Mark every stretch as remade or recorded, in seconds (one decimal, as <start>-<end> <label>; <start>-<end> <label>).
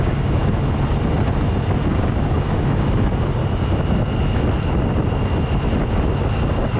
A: 0.0-0.4 remade; 0.4-1.9 recorded; 1.9-3.4 remade; 3.4-6.3 recorded; 6.3-6.8 remade